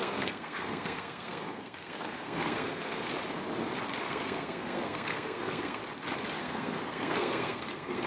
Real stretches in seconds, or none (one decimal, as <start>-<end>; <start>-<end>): 3.1-4.0; 5.8-6.4